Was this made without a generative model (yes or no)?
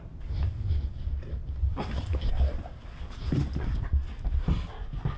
yes